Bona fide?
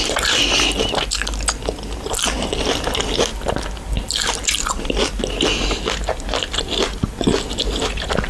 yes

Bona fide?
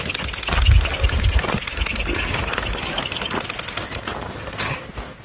yes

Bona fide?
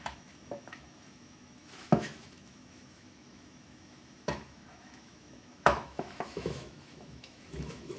no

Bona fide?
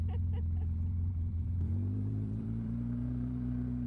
no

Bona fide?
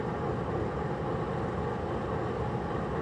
yes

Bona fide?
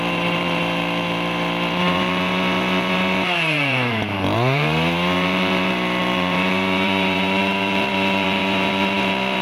no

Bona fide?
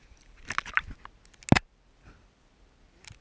yes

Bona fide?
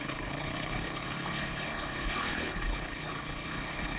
no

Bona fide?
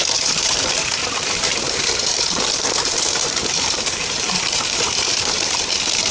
no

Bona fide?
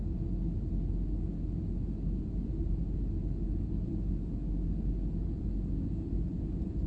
yes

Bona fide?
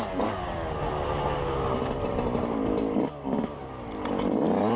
yes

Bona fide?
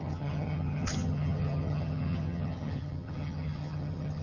no